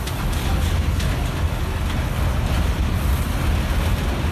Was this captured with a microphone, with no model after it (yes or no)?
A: yes